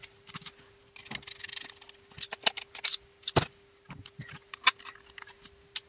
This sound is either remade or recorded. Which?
recorded